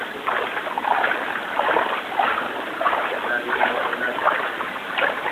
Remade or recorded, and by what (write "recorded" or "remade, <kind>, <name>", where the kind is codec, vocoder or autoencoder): recorded